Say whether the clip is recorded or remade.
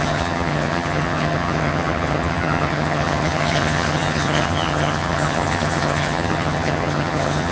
remade